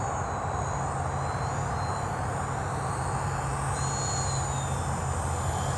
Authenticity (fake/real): real